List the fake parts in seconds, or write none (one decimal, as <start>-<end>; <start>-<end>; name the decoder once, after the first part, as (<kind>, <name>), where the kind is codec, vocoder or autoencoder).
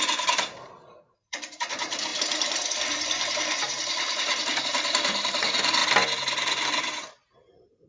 0.0-5.8 (vocoder, BigVGAN v2); 6.7-7.9